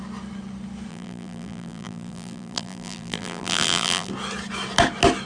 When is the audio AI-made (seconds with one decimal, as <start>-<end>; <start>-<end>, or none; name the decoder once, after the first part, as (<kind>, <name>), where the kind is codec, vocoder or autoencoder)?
0.9-4.1 (vocoder, BigVGAN v2)